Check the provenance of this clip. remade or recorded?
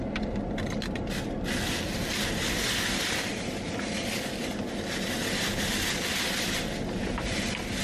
recorded